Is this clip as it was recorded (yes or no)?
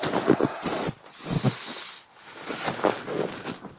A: yes